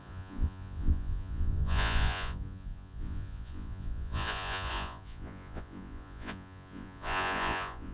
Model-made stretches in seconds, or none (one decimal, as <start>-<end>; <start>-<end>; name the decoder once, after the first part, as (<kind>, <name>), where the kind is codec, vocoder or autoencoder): 0.0-7.9 (vocoder, Vocos)